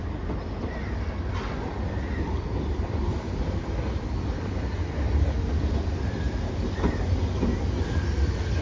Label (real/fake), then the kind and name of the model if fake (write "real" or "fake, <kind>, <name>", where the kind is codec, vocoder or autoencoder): real